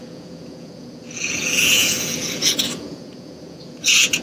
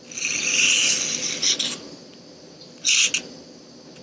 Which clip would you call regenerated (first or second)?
first